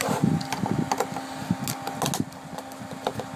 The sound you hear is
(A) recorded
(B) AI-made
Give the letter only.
A